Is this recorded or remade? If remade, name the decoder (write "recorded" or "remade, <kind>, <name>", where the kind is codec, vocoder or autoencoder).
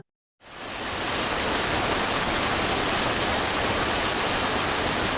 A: recorded